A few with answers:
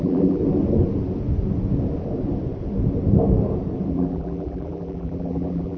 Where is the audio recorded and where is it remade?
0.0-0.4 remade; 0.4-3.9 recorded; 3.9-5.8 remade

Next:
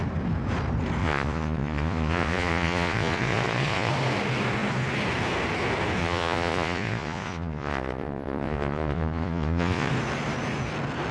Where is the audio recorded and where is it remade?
0.0-1.0 recorded; 1.0-3.9 remade; 3.9-6.0 recorded; 6.0-9.9 remade; 9.9-11.1 recorded

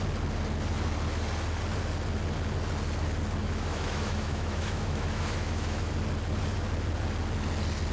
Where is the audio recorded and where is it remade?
0.0-3.4 recorded; 3.4-5.9 remade; 5.9-7.9 recorded

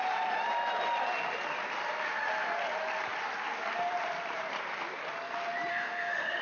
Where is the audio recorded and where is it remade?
0.0-5.7 recorded; 5.7-6.4 remade